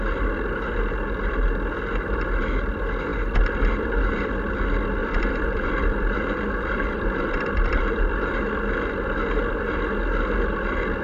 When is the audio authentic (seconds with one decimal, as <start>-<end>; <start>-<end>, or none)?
0.0-3.1; 4.0-5.0; 8.4-11.0